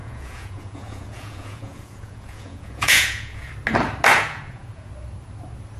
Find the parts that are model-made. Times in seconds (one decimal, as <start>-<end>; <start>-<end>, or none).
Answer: 0.0-3.5; 4.1-4.9